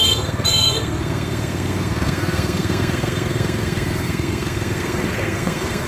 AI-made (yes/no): yes